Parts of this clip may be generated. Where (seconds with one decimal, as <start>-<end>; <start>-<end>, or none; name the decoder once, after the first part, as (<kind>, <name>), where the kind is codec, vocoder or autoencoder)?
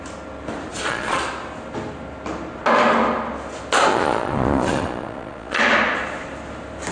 0.7-1.2 (vocoder, Vocos); 3.9-5.6